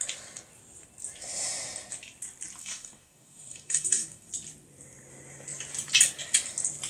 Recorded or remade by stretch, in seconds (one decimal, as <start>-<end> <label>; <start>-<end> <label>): 0.0-2.6 recorded; 2.6-4.3 remade; 4.3-6.9 recorded